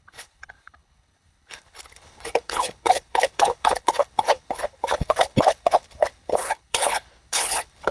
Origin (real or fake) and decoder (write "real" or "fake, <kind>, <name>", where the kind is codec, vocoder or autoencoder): fake, codec, HILCodec